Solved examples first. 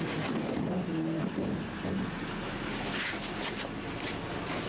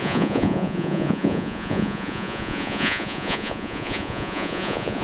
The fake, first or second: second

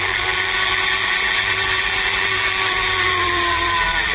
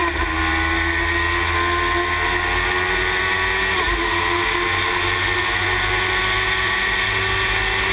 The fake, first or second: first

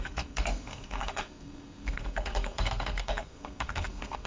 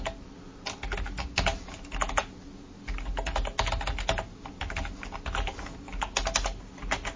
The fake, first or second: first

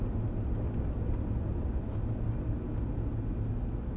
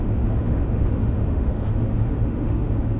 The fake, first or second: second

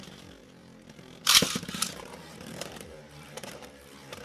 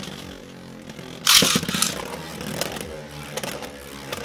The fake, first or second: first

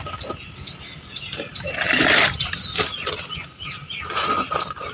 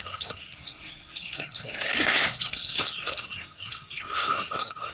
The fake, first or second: second